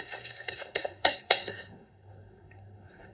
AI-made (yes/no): yes